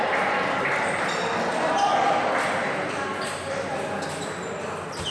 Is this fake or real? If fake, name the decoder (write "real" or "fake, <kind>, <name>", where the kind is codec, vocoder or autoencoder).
real